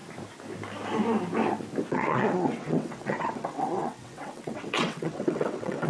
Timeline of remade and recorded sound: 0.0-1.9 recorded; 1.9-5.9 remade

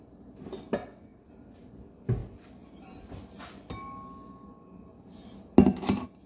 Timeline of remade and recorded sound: 0.0-0.8 recorded; 0.8-1.3 remade; 1.3-6.3 recorded

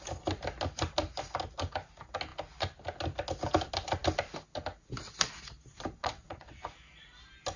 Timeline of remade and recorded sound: 0.0-6.0 recorded; 6.0-6.6 remade; 6.6-7.6 recorded